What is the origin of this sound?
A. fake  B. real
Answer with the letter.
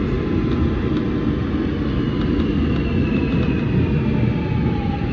B